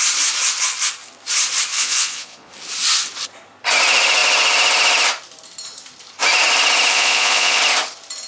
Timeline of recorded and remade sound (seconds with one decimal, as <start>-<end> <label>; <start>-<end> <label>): 0.0-1.7 recorded; 1.7-2.5 remade; 2.5-6.9 recorded; 6.9-7.6 remade; 7.6-8.3 recorded